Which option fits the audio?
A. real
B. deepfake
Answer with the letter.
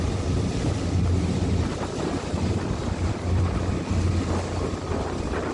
B